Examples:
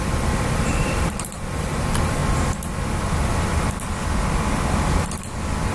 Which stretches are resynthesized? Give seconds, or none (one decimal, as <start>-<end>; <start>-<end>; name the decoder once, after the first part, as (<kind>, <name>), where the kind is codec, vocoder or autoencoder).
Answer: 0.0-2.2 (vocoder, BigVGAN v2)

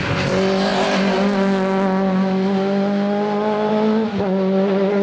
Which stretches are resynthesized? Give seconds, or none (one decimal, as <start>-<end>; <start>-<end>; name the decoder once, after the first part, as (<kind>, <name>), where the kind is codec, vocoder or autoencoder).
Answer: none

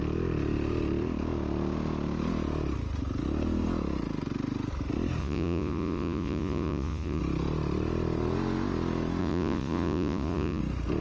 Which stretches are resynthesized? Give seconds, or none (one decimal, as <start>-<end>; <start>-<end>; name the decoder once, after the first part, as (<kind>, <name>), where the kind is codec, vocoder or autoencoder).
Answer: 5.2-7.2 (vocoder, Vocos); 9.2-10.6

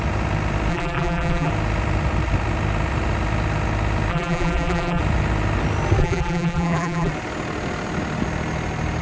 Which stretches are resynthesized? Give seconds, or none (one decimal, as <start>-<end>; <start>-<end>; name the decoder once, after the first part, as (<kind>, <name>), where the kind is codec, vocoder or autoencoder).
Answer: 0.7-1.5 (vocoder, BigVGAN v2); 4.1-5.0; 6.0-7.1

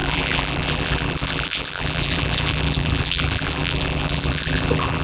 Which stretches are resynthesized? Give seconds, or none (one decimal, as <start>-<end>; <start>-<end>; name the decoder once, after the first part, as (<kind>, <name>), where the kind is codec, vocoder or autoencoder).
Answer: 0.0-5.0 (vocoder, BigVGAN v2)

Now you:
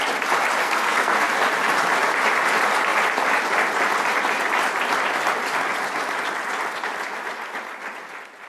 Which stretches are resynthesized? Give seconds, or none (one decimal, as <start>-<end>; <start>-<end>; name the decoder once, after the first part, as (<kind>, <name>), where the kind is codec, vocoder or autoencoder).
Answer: 0.6-1.3 (codec, SNAC)